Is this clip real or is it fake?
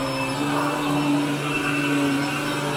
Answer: real